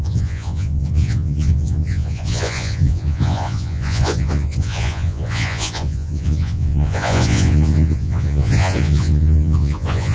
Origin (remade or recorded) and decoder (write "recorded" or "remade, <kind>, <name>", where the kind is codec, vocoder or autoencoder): remade, vocoder, Vocos